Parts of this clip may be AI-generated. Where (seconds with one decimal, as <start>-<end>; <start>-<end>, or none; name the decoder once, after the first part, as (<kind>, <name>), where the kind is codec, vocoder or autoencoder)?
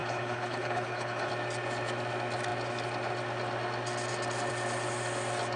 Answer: 0.0-1.3 (codec, HILCodec)